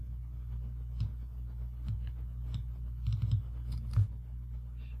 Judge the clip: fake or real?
real